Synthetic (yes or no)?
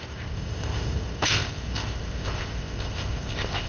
yes